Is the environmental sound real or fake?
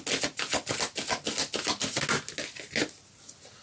real